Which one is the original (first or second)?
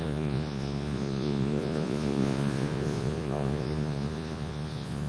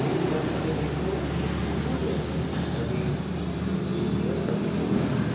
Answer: second